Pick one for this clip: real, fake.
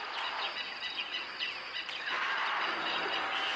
real